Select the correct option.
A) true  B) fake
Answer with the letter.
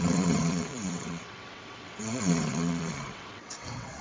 B